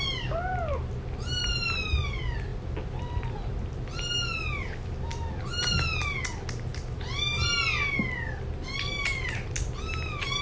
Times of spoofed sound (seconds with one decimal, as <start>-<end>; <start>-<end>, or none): none